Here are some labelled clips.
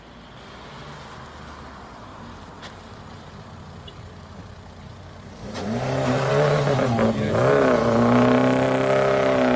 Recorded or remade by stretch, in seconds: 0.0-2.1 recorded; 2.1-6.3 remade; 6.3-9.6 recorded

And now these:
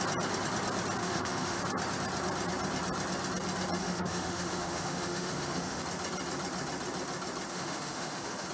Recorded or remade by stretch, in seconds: 0.0-1.0 recorded; 1.0-1.6 remade; 1.6-3.8 recorded; 3.8-5.8 remade; 5.8-7.5 recorded; 7.5-8.5 remade

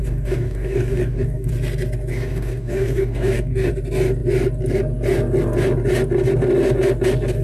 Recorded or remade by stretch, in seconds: 0.0-1.5 remade; 1.5-2.1 recorded; 2.1-3.7 remade; 3.7-7.4 recorded

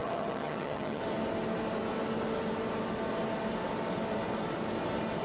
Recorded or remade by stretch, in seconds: 0.0-1.0 remade; 1.0-5.2 recorded

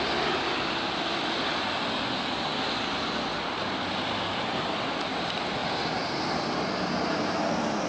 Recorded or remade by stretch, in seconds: 0.0-7.9 recorded

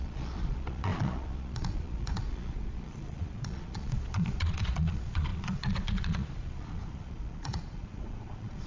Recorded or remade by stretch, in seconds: 0.0-8.7 remade

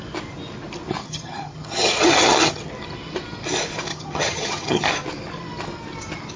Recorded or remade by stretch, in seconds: 0.0-1.0 recorded; 1.0-2.7 remade; 2.7-3.9 recorded; 3.9-4.9 remade; 4.9-6.4 recorded

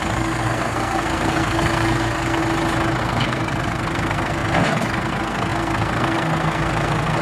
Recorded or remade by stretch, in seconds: 0.0-2.4 remade; 2.4-3.0 recorded; 3.0-7.2 remade